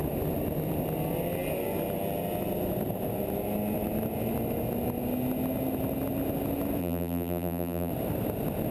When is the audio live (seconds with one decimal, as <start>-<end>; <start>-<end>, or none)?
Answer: 0.0-6.8; 7.9-8.7